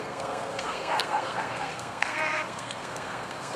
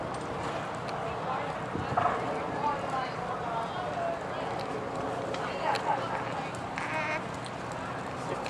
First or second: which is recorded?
second